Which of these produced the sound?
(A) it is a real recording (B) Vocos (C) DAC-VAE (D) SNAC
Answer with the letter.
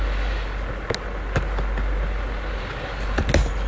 A